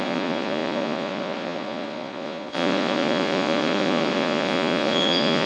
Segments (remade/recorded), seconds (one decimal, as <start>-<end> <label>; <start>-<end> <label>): 0.0-5.5 remade